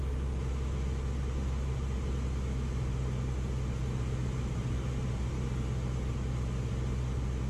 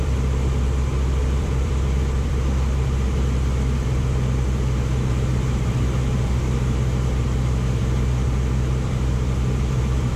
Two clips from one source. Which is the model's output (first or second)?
second